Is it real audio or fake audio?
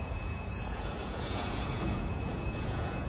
fake